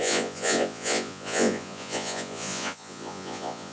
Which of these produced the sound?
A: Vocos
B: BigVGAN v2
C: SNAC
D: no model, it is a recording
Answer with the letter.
A